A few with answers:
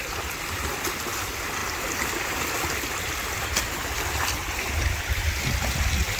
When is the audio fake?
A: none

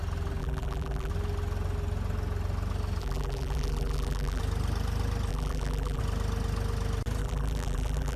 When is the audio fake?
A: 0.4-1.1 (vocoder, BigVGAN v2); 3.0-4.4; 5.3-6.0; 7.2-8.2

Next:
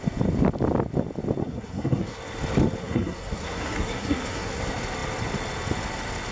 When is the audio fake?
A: 1.4-2.2 (codec, SNAC); 2.8-4.6

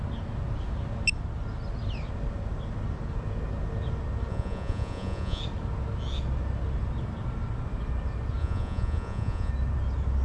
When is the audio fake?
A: 4.3-5.4 (vocoder, Vocos); 8.4-9.5

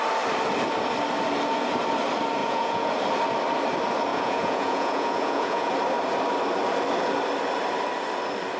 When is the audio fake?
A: 2.4-2.9 (vocoder, Vocos); 4.1-5.7

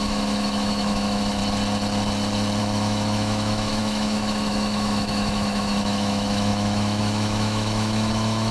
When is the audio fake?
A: 0.0-1.4 (autoencoder, DAC-VAE); 2.6-8.5